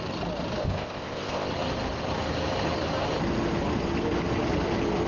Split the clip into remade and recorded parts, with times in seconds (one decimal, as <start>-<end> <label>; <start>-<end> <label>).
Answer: 0.0-0.6 recorded; 0.6-1.5 remade; 1.5-5.1 recorded